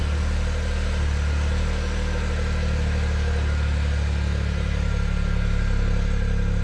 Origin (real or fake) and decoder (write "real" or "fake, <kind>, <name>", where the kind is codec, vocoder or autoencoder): real